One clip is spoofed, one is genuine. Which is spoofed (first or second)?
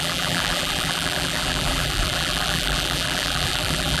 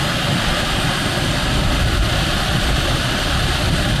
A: first